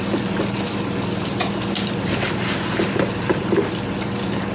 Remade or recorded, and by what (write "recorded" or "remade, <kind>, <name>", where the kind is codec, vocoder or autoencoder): recorded